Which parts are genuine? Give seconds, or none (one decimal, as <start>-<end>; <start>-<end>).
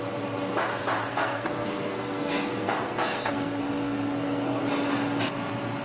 0.0-1.1; 4.6-5.8